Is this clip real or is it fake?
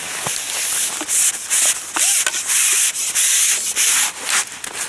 real